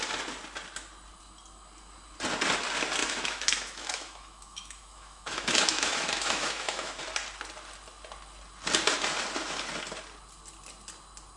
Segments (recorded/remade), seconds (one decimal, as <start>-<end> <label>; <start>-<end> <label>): 0.0-3.0 recorded; 3.0-7.0 remade; 7.0-11.4 recorded